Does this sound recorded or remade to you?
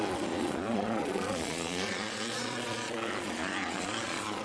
remade